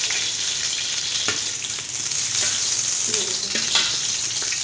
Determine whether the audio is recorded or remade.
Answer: recorded